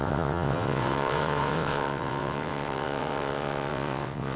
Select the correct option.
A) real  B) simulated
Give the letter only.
B